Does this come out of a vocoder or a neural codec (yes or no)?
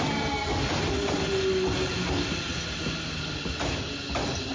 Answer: no